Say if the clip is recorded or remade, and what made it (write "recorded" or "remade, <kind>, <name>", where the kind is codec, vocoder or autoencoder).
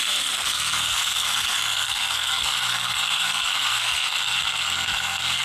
remade, codec, SNAC